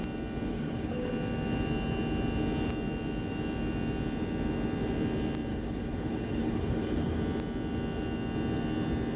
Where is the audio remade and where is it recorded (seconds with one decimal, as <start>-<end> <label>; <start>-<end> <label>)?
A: 0.0-0.5 recorded; 0.5-1.1 remade; 1.1-5.5 recorded; 5.5-7.2 remade; 7.2-9.2 recorded